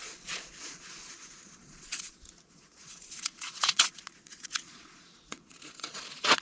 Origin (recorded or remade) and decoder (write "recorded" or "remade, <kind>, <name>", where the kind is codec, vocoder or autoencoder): remade, vocoder, Vocos